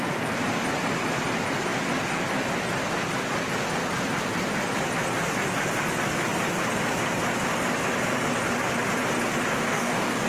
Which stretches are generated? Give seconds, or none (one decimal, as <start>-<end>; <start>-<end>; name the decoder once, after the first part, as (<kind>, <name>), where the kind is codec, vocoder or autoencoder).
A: 9.5-10.3 (codec, DAC)